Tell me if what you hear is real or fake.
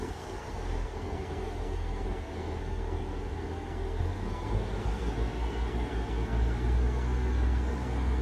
fake